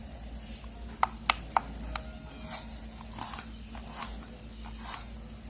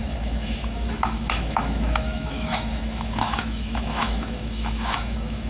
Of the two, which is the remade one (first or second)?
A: second